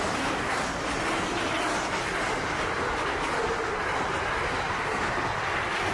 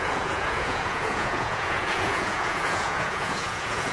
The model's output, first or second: second